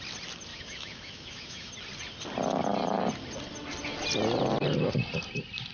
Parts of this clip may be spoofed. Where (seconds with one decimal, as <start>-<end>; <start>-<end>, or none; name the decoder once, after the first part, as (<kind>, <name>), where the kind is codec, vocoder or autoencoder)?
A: 0.5-1.7 (autoencoder, DAC-VAE)